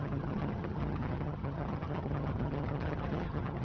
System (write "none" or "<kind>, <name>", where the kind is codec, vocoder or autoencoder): vocoder, HiFi-GAN